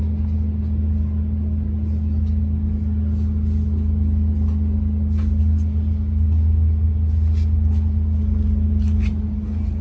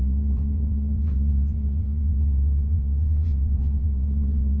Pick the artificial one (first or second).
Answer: second